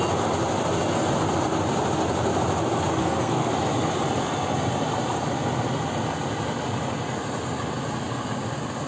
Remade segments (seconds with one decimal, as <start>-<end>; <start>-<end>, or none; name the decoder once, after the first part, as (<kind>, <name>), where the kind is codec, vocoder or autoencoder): 3.0-3.5 (codec, SNAC)